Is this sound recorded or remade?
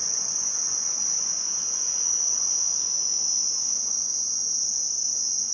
remade